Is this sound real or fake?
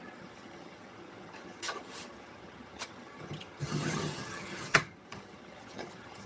fake